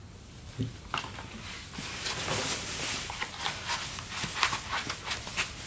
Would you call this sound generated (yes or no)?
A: no